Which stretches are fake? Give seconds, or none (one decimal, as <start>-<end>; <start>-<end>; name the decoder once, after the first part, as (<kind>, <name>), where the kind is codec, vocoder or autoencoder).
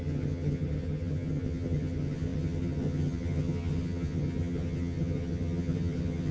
0.0-6.3 (vocoder, HiFi-GAN)